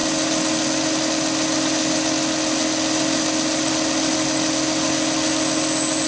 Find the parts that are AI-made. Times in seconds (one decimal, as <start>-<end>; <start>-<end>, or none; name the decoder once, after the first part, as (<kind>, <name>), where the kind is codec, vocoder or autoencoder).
none